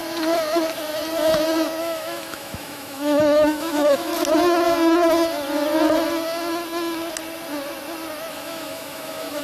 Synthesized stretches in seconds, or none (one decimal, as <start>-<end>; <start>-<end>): 1.8-4.1; 8.3-9.4